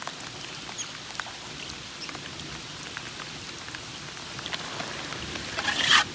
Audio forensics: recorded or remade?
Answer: recorded